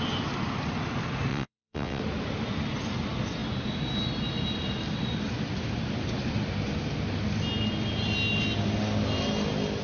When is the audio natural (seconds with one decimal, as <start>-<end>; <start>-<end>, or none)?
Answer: 0.0-1.3; 2.0-9.8